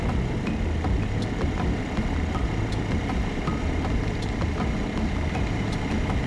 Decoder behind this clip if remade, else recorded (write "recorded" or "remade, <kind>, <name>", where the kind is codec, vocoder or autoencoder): recorded